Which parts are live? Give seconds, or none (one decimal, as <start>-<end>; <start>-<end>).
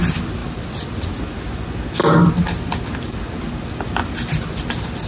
0.0-5.1